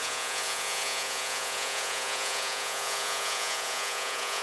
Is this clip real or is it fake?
fake